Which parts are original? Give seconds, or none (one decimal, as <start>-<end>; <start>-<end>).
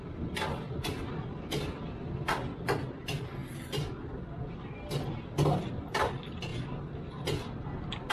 0.0-8.1